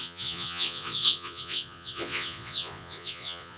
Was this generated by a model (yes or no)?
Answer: yes